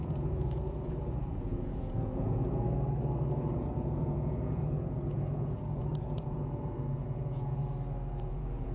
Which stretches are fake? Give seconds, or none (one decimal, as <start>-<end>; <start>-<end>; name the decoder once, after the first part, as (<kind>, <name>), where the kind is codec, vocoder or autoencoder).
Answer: 0.0-2.4 (vocoder, Vocos); 3.4-7.6; 8.2-8.7